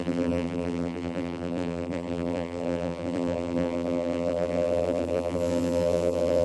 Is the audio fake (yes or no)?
yes